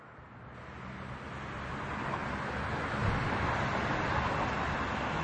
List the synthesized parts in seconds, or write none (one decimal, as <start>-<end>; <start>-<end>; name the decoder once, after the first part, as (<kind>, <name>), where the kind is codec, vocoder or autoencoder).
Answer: none